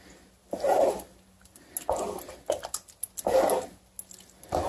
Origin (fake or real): real